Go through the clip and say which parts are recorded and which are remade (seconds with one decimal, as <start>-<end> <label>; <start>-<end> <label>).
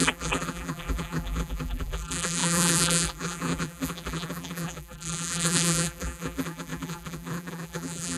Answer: 0.0-8.2 remade